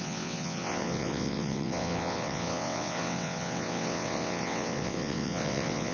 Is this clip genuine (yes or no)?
no